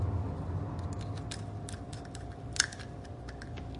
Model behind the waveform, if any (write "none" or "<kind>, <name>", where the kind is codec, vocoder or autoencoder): none